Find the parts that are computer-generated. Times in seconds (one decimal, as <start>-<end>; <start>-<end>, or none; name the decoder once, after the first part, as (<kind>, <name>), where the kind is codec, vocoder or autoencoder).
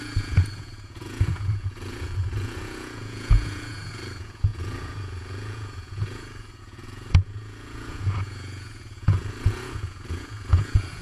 0.0-11.0 (vocoder, Vocos)